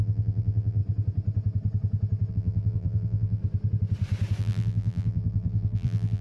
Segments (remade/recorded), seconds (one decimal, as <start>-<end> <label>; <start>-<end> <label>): 0.0-0.8 remade; 0.8-2.3 recorded; 2.3-3.4 remade; 3.4-4.4 recorded; 4.4-6.2 remade